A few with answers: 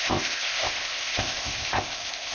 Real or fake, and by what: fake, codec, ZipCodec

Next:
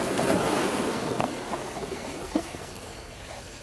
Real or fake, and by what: fake, codec, SNAC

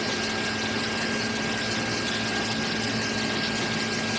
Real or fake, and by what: real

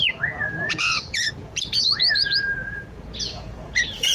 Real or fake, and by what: fake, vocoder, Vocos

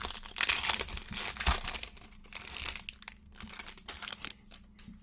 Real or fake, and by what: real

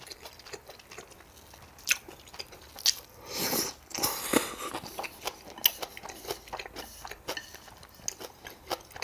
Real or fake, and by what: real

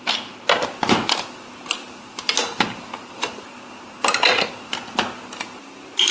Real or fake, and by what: real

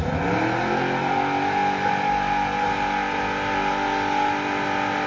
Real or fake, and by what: real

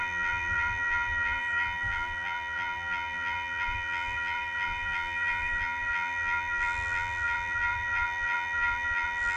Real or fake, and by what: fake, vocoder, BigVGAN v2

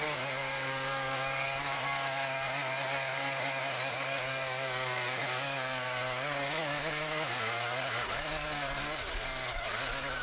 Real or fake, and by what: fake, codec, DAC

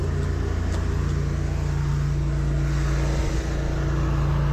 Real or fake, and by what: real